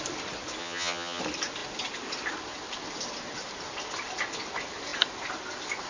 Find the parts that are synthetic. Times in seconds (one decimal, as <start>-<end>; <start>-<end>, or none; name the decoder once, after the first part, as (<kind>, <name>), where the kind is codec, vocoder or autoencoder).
0.6-1.2 (vocoder, HiFi-GAN)